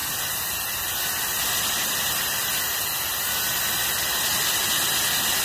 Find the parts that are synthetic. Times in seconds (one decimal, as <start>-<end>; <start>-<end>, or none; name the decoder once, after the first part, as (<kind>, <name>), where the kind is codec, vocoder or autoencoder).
none

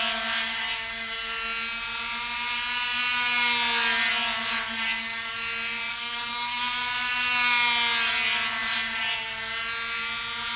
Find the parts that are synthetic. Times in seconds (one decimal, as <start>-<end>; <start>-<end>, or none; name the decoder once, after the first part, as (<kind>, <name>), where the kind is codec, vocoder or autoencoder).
5.9-6.6 (codec, SNAC)